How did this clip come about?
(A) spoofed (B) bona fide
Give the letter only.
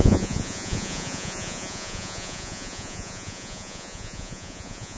A